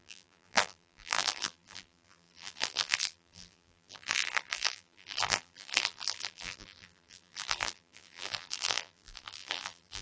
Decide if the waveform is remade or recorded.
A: remade